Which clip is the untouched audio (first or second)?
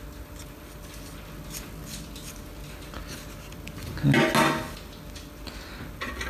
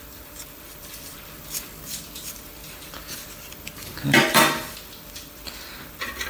first